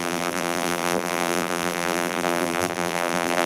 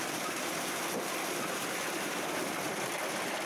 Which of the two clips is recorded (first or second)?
second